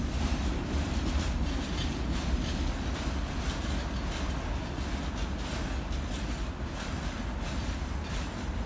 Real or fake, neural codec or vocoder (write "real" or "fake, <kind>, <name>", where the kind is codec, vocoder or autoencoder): real